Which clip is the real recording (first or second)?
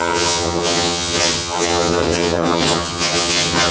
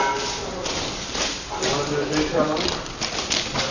second